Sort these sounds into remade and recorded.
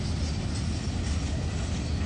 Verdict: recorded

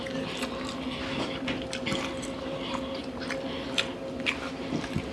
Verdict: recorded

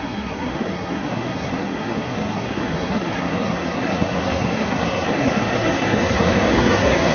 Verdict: remade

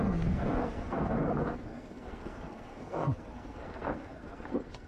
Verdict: remade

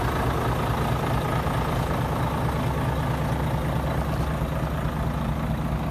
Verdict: recorded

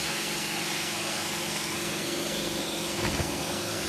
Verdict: remade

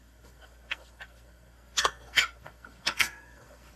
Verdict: remade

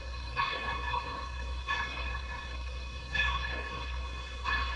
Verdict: remade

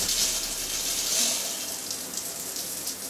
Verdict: recorded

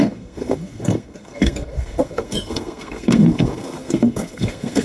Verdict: remade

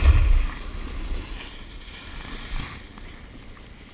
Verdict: recorded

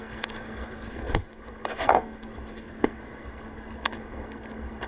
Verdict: remade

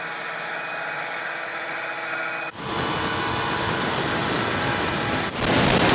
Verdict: recorded